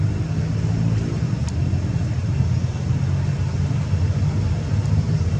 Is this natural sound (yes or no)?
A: yes